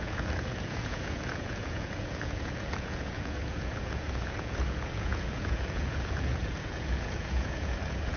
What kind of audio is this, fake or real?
fake